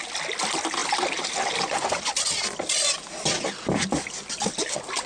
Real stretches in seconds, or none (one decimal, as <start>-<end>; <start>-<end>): 0.0-5.1